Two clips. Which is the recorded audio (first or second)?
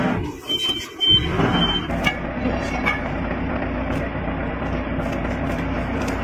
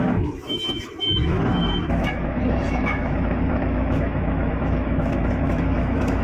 first